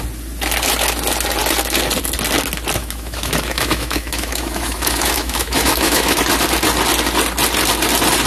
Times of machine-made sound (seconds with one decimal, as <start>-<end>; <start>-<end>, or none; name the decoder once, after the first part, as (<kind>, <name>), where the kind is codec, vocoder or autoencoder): 2.8-6.2 (autoencoder, DAC-VAE)